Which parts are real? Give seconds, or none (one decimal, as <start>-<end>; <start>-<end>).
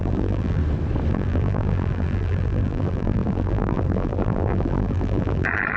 0.6-1.1